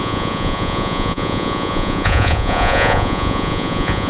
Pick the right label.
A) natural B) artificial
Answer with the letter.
B